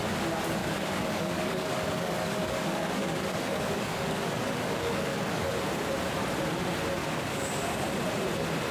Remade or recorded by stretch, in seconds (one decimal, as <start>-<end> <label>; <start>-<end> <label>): 0.0-0.6 recorded; 0.6-5.5 remade; 5.5-7.0 recorded; 7.0-7.5 remade; 7.5-8.7 recorded